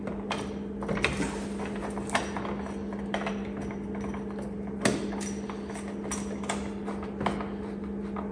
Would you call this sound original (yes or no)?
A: yes